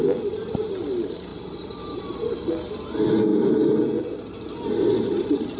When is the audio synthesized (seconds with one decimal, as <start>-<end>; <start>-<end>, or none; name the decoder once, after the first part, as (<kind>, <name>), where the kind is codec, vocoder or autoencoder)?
1.3-2.0 (vocoder, BigVGAN v2)